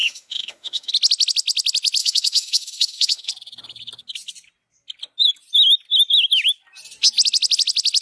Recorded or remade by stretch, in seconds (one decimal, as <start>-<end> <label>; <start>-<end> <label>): 0.0-0.9 remade; 0.9-2.0 recorded; 2.0-3.3 remade; 3.3-8.0 recorded